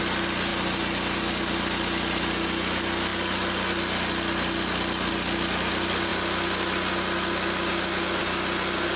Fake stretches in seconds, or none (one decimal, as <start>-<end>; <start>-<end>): none